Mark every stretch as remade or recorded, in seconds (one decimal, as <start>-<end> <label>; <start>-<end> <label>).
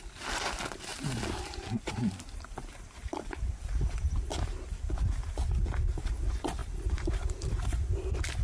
0.0-0.9 recorded; 0.9-4.3 remade; 4.3-6.6 recorded; 6.6-7.1 remade; 7.1-8.4 recorded